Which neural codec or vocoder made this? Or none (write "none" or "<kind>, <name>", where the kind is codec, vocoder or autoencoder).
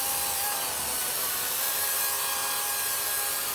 none